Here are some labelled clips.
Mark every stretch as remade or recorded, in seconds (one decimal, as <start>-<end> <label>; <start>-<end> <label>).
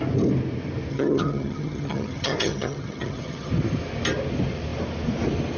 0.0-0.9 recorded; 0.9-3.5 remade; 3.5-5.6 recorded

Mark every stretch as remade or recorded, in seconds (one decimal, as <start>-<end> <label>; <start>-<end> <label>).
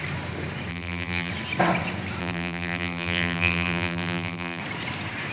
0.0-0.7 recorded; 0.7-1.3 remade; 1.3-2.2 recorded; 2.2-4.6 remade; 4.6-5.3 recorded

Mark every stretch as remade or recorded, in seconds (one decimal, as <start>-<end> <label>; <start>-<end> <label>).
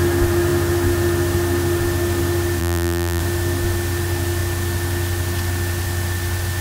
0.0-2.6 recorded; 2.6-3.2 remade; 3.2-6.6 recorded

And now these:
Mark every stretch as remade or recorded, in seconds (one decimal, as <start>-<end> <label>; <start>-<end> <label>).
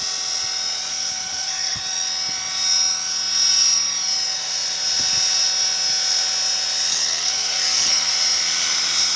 0.0-0.9 recorded; 0.9-1.8 remade; 1.8-6.9 recorded; 6.9-8.1 remade; 8.1-9.2 recorded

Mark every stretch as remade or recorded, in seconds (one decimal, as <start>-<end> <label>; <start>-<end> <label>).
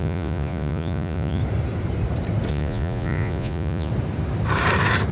0.0-1.4 remade; 1.4-2.5 recorded; 2.5-3.9 remade; 3.9-5.1 recorded